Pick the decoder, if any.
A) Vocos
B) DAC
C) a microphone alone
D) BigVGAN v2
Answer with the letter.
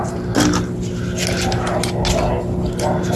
C